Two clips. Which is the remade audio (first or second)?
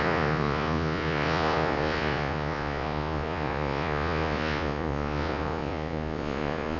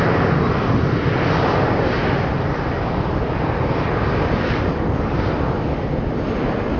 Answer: first